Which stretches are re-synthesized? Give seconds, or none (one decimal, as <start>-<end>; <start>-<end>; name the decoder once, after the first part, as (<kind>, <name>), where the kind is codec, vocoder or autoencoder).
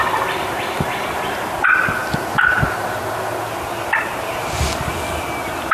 none